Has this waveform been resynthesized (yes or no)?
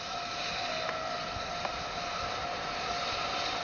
no